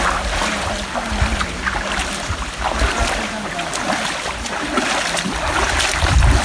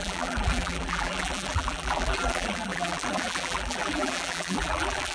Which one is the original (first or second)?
first